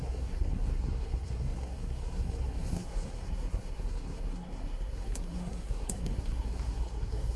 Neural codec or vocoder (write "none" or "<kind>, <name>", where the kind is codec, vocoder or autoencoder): codec, SNAC